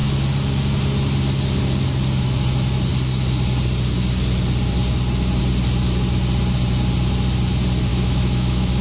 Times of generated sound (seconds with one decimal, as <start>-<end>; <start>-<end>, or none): 7.9-8.8